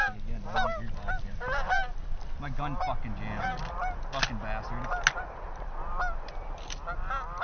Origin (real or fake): real